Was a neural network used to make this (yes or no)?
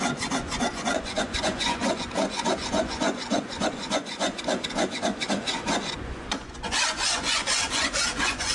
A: yes